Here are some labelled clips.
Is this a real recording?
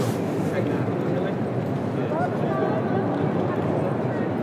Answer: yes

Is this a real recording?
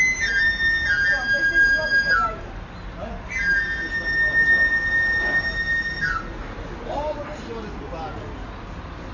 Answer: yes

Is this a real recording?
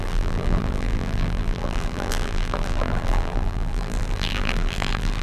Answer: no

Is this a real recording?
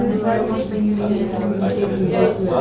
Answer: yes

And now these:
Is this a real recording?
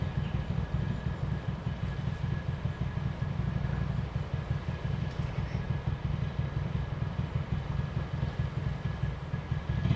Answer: yes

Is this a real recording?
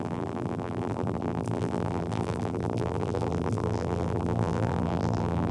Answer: no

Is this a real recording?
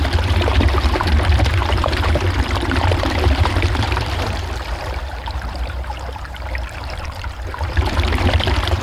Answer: no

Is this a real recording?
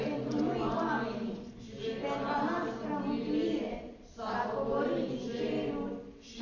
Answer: yes